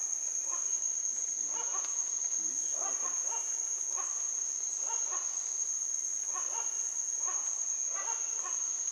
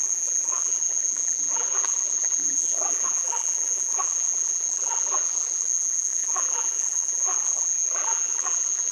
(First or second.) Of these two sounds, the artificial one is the second